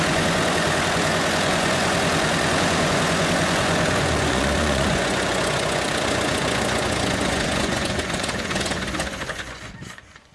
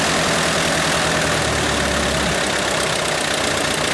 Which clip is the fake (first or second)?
first